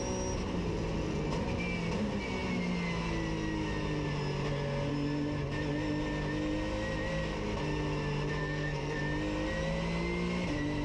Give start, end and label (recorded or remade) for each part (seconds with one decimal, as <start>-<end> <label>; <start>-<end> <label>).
0.0-8.4 recorded; 8.4-9.0 remade; 9.0-10.8 recorded